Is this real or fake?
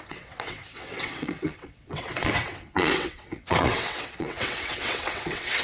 fake